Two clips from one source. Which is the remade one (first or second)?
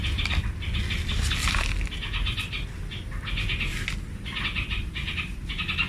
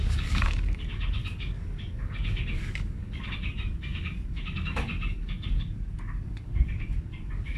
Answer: second